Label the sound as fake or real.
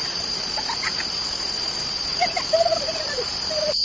real